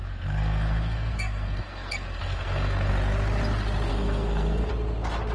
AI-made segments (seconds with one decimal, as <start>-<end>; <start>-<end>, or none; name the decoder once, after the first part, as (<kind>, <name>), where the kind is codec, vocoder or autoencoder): 0.0-2.9 (codec, SNAC); 3.9-4.7